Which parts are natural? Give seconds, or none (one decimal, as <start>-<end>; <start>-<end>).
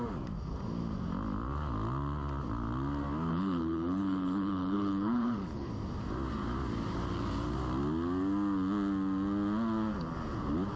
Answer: 0.0-3.3; 5.7-10.8